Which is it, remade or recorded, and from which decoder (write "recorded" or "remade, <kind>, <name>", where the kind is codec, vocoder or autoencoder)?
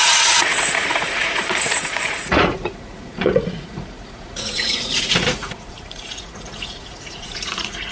remade, vocoder, Vocos